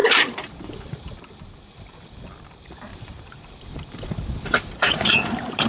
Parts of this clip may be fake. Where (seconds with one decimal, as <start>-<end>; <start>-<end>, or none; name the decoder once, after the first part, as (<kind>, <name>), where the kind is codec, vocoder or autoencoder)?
0.0-1.8 (vocoder, BigVGAN v2); 2.9-5.1

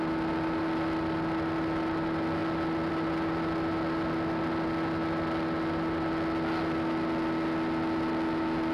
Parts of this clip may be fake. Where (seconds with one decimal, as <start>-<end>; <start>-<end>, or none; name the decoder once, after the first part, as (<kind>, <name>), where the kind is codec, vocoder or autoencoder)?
none

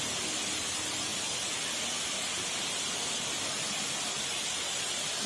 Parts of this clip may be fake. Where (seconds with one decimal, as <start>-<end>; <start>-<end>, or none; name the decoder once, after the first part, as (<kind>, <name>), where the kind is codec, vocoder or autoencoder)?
none

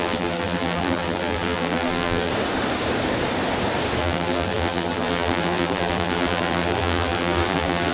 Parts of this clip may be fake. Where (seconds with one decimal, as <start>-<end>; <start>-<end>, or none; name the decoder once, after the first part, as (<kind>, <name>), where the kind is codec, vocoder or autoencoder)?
0.0-2.3 (vocoder, BigVGAN v2); 4.0-7.9

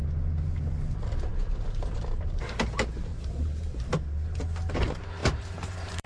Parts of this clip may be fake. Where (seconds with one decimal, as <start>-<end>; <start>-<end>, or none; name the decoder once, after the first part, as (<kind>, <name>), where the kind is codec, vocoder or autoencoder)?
3.1-3.8 (vocoder, BigVGAN v2); 5.2-6.1